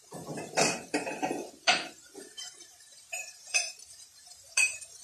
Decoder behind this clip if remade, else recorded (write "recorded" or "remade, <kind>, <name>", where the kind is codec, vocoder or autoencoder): remade, vocoder, BigVGAN v2